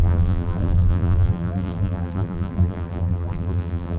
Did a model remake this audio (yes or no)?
yes